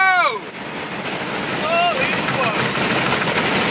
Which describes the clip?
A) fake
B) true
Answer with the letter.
B